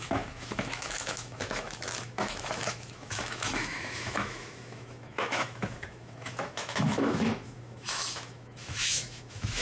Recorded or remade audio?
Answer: remade